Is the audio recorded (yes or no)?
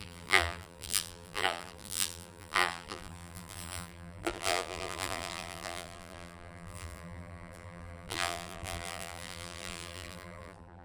no